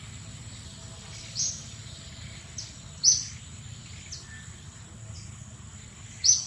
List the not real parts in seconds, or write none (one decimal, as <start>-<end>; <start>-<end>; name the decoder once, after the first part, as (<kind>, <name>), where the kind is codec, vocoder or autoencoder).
none